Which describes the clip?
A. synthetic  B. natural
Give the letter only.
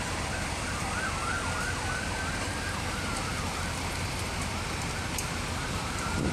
B